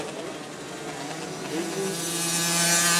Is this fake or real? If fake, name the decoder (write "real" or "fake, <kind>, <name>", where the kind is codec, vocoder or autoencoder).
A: real